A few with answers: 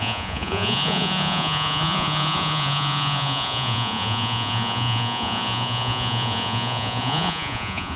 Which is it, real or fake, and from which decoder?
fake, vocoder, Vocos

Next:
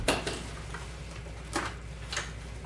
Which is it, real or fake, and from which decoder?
real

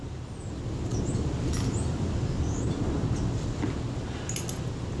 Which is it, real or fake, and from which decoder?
real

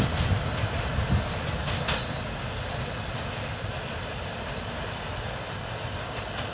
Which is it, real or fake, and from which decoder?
real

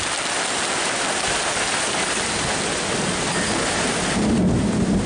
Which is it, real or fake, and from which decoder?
real